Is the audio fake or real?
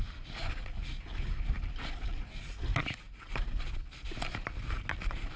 real